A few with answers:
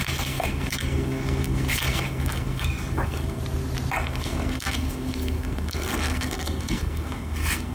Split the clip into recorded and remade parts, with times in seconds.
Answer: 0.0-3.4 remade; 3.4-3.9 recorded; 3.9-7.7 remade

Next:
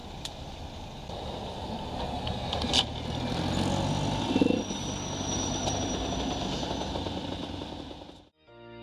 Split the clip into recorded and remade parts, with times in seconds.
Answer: 0.0-8.8 recorded

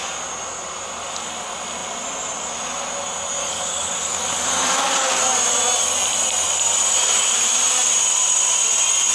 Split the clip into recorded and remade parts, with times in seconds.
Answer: 0.0-3.4 recorded; 3.4-5.2 remade; 5.2-9.1 recorded

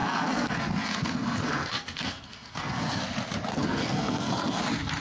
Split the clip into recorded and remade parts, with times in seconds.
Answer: 0.0-3.0 remade; 3.0-3.5 recorded; 3.5-4.6 remade; 4.6-5.0 recorded

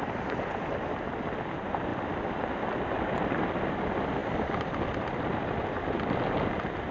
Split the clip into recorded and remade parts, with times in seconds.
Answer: 0.0-1.9 recorded; 1.9-2.7 remade; 2.7-4.2 recorded; 4.2-5.2 remade; 5.2-6.9 recorded

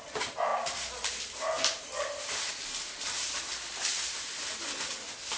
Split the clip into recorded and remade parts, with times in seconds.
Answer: 0.0-5.4 recorded

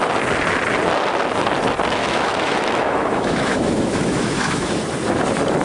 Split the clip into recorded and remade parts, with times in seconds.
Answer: 0.0-2.0 recorded; 2.0-4.7 remade; 4.7-5.6 recorded